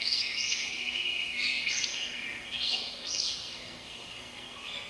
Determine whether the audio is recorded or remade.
remade